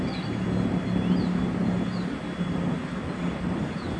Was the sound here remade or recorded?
recorded